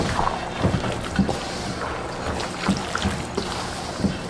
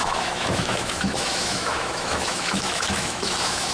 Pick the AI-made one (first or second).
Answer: second